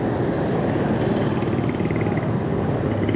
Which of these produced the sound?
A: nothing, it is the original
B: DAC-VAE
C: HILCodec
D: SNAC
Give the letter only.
A